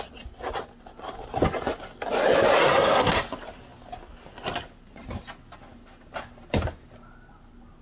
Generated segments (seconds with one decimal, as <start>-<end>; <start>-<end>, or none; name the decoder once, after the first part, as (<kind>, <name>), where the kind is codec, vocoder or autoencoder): 2.7-3.2 (codec, SNAC)